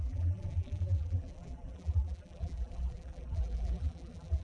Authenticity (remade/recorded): remade